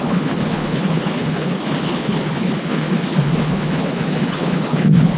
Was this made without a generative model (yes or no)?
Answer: no